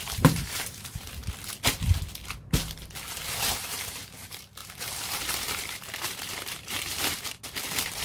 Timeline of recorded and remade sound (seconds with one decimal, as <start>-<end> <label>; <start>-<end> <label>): 0.0-1.2 remade; 1.2-3.2 recorded; 3.2-8.0 remade

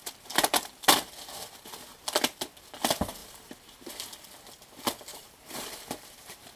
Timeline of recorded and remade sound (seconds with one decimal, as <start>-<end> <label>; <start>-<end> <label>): 0.0-1.1 remade; 1.1-3.2 recorded; 3.2-3.9 remade; 3.9-5.1 recorded; 5.1-6.6 remade

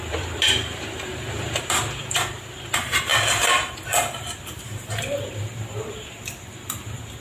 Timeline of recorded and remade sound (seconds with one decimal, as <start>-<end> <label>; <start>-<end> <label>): 0.0-3.1 remade; 3.1-4.4 recorded; 4.4-7.2 remade

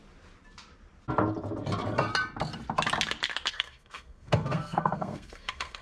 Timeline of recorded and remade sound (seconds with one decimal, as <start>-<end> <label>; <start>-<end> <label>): 0.0-3.5 recorded; 3.5-5.8 remade

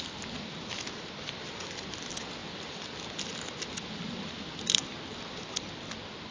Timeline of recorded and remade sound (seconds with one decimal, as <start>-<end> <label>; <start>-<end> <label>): 0.0-6.3 recorded

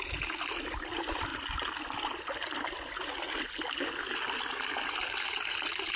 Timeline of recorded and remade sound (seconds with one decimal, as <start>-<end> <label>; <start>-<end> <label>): 0.0-6.0 recorded

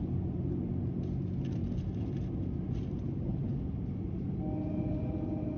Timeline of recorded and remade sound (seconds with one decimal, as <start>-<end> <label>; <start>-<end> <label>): 0.0-5.6 recorded

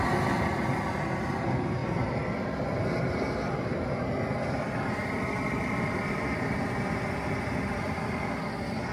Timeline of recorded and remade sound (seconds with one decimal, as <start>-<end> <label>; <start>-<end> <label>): 0.0-8.9 recorded